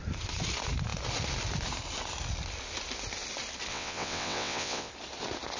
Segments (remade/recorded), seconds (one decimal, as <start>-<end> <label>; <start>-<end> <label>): 0.0-3.7 recorded; 3.7-4.9 remade; 4.9-5.6 recorded